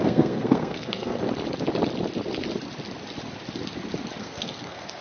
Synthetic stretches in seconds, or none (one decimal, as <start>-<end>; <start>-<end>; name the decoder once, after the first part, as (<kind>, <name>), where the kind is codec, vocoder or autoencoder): 0.0-1.2 (codec, SNAC); 4.2-5.0